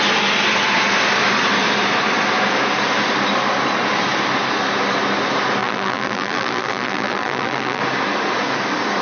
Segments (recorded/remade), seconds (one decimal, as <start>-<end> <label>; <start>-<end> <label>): 0.0-5.6 recorded; 5.6-7.8 remade; 7.8-9.0 recorded